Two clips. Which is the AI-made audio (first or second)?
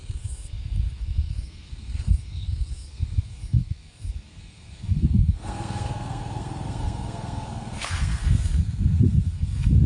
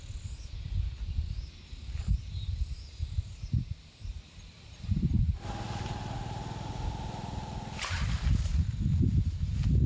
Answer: first